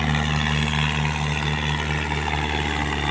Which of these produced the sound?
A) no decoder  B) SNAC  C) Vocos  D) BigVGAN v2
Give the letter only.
A